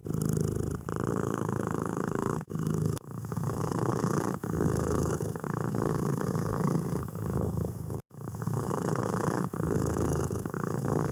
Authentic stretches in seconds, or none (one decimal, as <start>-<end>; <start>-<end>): 0.0-1.1